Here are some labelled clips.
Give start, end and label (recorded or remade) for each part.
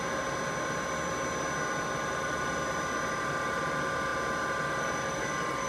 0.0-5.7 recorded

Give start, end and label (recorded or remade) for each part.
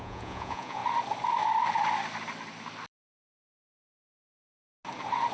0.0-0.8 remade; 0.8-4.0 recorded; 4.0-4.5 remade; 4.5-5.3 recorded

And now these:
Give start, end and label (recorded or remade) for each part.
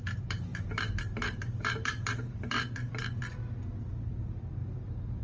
0.0-0.5 recorded; 0.5-2.9 remade; 2.9-4.6 recorded; 4.6-5.2 remade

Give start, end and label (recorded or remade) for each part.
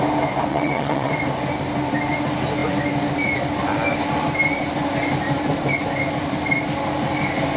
0.0-0.5 recorded; 0.5-1.1 remade; 1.1-7.6 recorded